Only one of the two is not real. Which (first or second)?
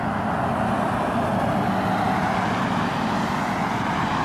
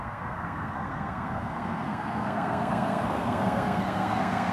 second